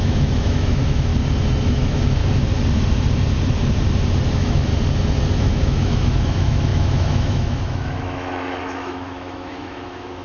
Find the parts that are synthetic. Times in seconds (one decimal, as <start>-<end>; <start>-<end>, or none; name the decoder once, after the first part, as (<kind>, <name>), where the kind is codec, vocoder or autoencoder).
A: 0.0-1.1 (autoencoder, DAC-VAE); 1.6-2.2; 4.3-4.7; 5.4-10.2